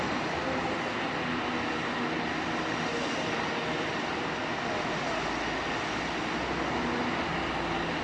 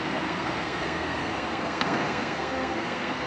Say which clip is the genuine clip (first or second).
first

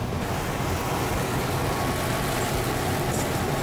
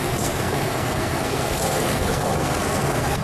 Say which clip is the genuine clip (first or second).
first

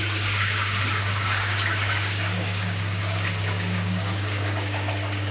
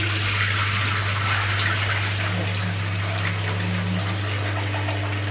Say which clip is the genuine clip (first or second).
second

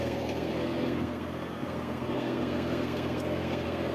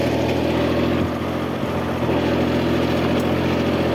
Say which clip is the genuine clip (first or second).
second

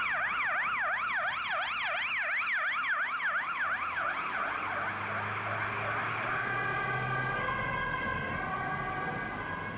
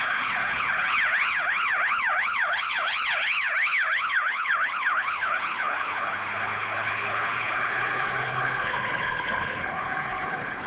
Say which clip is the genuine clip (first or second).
first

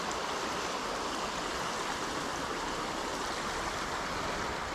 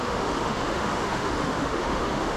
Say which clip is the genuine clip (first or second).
first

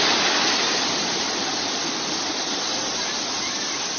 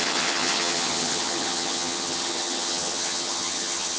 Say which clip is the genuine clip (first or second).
first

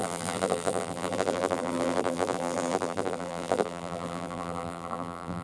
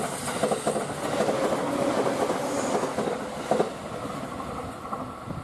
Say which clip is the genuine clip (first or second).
second